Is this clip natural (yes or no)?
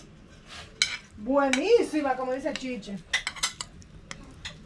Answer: yes